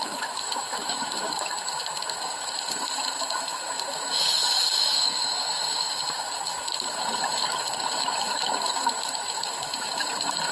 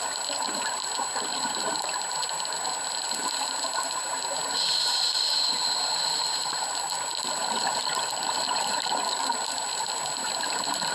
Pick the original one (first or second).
second